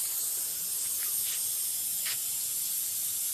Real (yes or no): yes